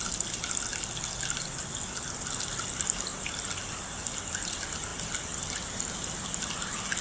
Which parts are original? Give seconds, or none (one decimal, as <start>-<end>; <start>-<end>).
0.0-7.0